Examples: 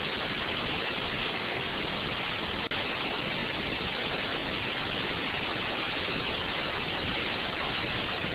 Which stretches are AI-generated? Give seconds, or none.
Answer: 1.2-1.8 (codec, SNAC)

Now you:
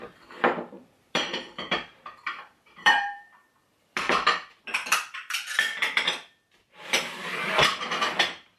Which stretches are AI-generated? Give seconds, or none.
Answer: 0.0-8.6 (vocoder, BigVGAN v2)

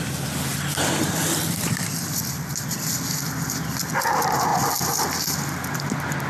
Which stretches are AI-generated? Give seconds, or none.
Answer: none